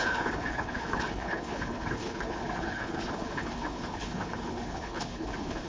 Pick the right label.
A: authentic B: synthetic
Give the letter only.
B